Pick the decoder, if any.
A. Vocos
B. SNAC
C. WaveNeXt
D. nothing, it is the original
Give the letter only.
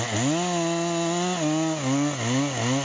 D